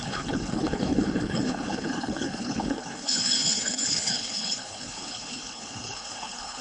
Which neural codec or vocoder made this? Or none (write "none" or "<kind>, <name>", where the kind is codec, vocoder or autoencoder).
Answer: codec, HILCodec